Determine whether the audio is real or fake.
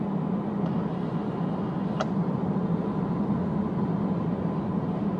real